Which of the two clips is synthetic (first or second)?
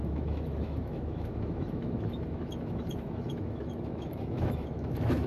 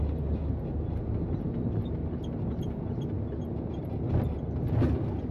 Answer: first